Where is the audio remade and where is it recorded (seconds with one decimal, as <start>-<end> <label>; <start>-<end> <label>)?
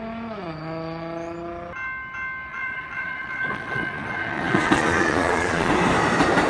0.0-2.5 recorded; 2.5-5.7 remade; 5.7-6.5 recorded